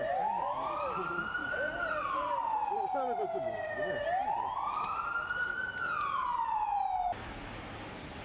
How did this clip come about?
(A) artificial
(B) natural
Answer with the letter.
B